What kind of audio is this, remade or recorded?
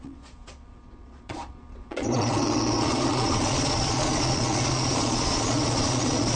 remade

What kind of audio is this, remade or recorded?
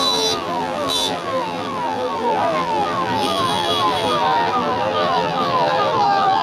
remade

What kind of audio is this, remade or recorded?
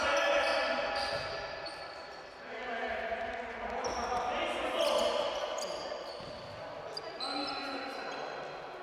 recorded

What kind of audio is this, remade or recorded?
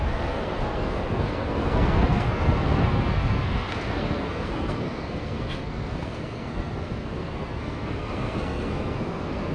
remade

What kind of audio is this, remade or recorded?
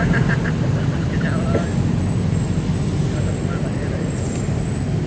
recorded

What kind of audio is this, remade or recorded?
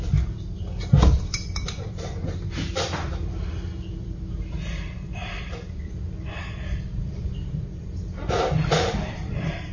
remade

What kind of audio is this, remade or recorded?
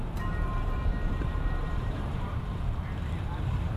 remade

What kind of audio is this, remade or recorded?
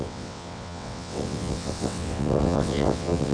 remade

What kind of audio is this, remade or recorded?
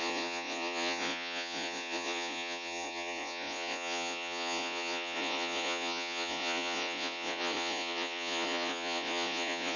remade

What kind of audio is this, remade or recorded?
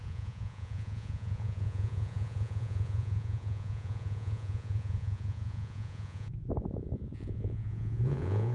remade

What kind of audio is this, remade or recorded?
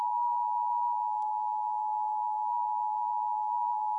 remade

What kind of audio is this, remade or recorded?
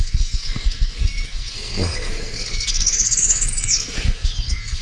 remade